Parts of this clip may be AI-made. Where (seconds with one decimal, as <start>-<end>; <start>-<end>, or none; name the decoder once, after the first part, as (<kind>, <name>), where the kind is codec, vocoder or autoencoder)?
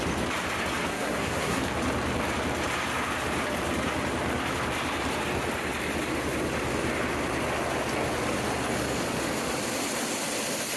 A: 0.9-1.6 (codec, SNAC)